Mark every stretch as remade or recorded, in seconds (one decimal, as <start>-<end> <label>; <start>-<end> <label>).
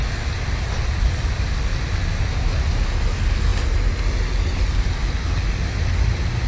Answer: 0.0-6.5 recorded